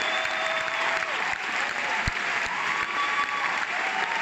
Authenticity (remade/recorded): remade